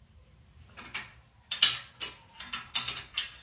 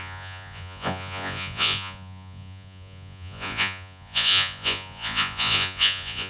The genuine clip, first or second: first